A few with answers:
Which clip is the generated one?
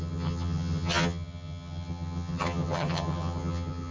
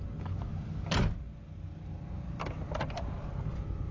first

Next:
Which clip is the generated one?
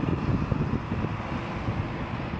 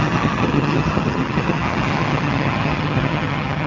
second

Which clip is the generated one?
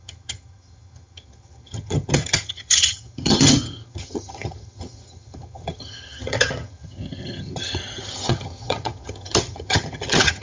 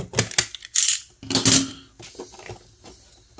first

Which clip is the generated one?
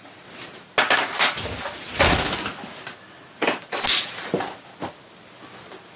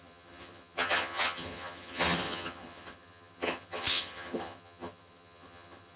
second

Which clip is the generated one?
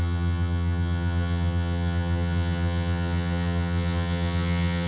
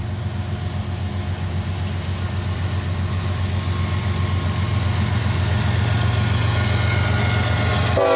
first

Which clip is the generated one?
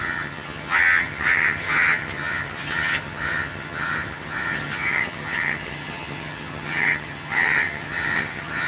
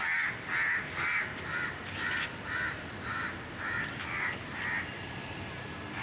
first